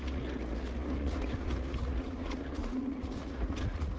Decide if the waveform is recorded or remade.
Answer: remade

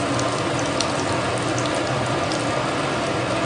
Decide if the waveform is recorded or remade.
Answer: recorded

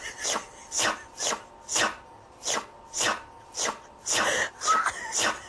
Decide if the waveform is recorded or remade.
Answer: recorded